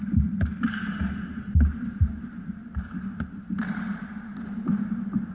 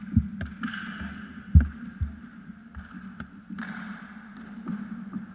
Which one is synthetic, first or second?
first